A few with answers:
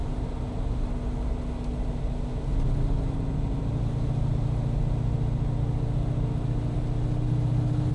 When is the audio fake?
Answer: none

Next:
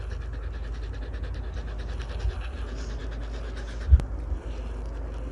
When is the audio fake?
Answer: none

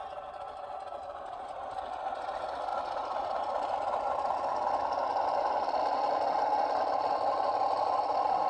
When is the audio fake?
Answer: none

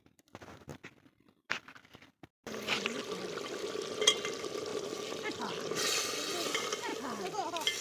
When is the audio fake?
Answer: none